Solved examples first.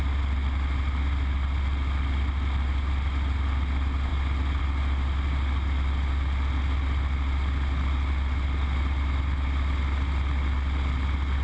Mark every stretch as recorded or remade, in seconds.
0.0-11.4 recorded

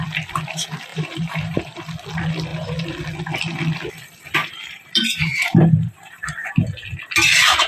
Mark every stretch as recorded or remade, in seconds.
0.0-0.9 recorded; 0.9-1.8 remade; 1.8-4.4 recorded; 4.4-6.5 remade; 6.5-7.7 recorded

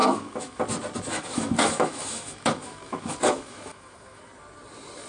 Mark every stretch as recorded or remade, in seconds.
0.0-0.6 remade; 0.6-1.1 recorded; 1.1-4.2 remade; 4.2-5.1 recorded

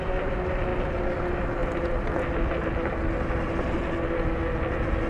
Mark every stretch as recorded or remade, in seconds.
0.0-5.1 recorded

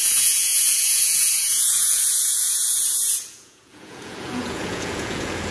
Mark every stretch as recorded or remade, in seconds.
0.0-5.5 remade

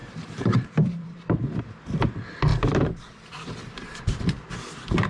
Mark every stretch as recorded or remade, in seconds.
0.0-1.6 remade; 1.6-2.5 recorded; 2.5-5.1 remade

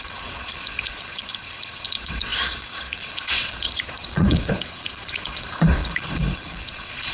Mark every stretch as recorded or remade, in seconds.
0.0-7.1 remade